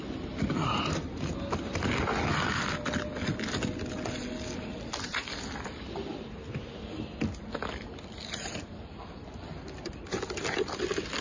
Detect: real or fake real